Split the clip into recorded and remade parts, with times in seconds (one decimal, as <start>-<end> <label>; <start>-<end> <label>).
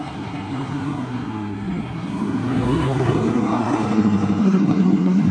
0.0-5.3 remade